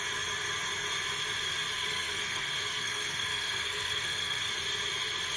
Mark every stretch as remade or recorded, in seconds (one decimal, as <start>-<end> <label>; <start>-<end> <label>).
0.0-1.8 recorded; 1.8-4.5 remade; 4.5-5.4 recorded